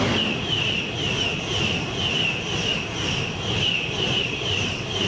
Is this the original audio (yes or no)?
yes